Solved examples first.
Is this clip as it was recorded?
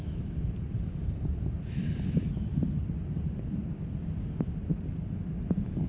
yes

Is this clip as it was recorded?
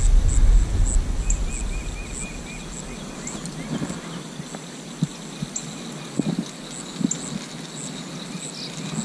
yes